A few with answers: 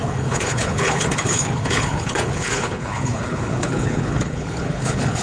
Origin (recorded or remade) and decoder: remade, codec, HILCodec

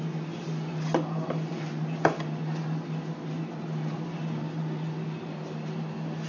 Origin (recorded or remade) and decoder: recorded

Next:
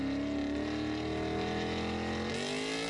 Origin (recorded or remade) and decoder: recorded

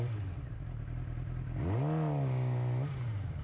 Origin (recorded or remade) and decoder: recorded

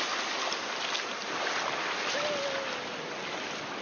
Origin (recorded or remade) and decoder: recorded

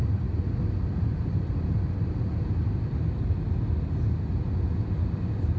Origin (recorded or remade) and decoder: recorded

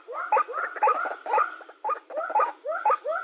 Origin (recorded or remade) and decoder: recorded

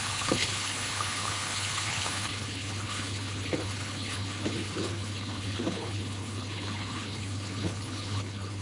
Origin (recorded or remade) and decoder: remade, codec, HILCodec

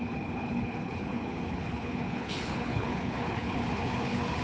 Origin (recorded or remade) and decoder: remade, codec, HILCodec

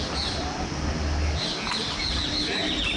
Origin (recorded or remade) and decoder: recorded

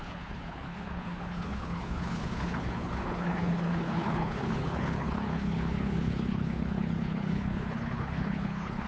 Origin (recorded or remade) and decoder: remade, codec, HILCodec